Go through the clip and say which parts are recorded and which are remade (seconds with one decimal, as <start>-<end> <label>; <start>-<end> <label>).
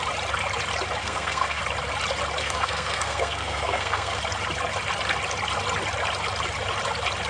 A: 0.0-1.0 recorded; 1.0-1.6 remade; 1.6-2.4 recorded; 2.4-4.2 remade; 4.2-7.3 recorded